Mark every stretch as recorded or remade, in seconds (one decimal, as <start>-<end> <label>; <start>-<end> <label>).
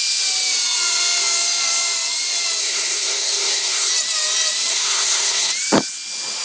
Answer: 0.0-2.6 recorded; 2.6-3.9 remade; 3.9-4.7 recorded; 4.7-5.5 remade; 5.5-6.4 recorded